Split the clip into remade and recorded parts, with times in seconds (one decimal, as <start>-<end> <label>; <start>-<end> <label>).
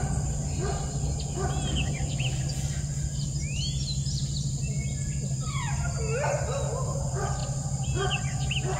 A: 0.0-7.4 recorded; 7.4-8.2 remade; 8.2-8.8 recorded